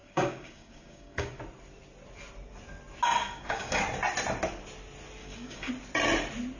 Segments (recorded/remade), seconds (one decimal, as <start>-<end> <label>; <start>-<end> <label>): 0.0-1.4 remade; 1.4-3.2 recorded; 3.2-3.8 remade; 3.8-5.2 recorded; 5.2-5.7 remade; 5.7-6.6 recorded

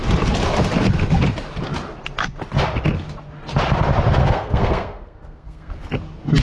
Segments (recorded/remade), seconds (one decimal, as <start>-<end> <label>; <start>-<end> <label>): 0.0-4.2 recorded; 4.2-5.8 remade; 5.8-6.4 recorded

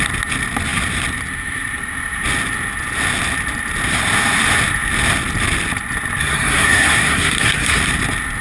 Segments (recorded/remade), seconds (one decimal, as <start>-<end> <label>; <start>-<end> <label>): 0.0-6.2 recorded; 6.2-7.8 remade; 7.8-8.4 recorded

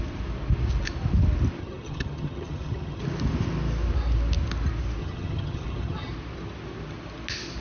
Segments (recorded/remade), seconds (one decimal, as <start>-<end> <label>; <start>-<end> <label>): 0.0-1.6 recorded; 1.6-3.0 remade; 3.0-5.0 recorded; 5.0-6.1 remade; 6.1-7.6 recorded